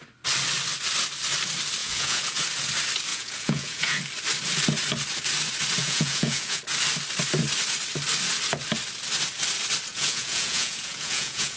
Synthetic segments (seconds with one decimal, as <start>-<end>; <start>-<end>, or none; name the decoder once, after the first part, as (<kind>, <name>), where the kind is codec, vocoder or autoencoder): 1.8-2.4 (vocoder, Vocos); 3.1-4.0; 5.8-6.6; 9.9-11.6